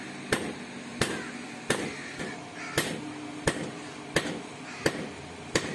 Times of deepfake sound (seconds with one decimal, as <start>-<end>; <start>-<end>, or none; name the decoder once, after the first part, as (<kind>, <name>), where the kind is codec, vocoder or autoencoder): none